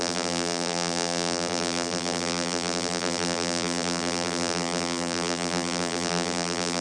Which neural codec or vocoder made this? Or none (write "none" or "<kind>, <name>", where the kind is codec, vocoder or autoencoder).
vocoder, BigVGAN v2